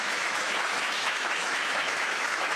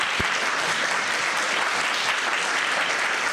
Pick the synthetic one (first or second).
first